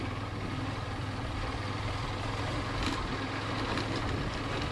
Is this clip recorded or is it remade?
recorded